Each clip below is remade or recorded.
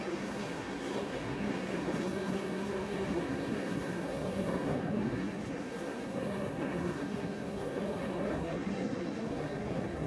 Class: remade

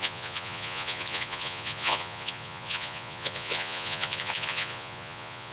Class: remade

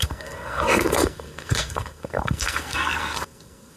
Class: remade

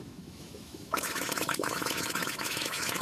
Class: remade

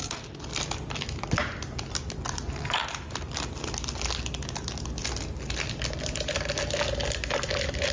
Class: recorded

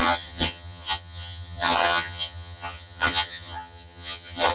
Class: remade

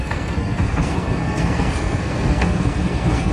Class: remade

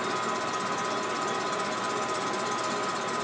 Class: remade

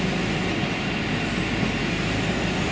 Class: recorded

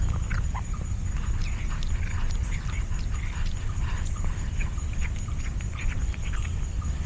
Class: recorded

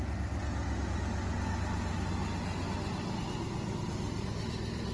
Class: recorded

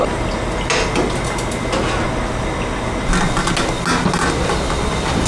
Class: recorded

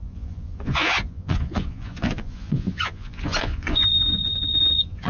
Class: remade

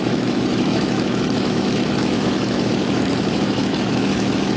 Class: remade